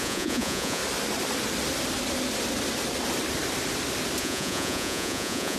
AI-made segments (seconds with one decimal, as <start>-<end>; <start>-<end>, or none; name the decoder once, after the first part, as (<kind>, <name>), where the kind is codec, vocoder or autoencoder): 0.0-0.8 (vocoder, Vocos); 4.2-5.6